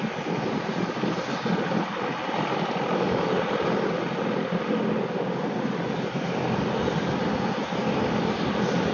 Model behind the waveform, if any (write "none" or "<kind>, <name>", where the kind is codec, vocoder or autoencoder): none